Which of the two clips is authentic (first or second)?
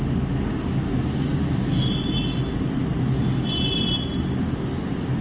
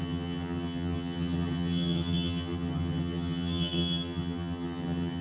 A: first